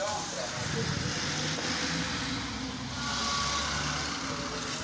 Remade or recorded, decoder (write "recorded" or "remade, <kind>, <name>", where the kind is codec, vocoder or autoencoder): recorded